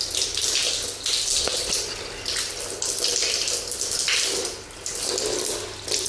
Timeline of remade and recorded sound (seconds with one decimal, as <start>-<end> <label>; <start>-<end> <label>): 0.0-6.1 recorded